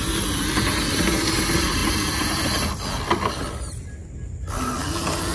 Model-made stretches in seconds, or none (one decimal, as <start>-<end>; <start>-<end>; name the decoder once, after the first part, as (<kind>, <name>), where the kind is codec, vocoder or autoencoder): none